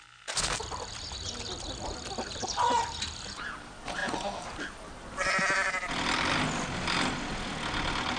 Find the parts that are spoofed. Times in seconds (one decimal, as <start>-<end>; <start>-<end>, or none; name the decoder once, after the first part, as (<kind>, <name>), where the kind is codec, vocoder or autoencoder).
none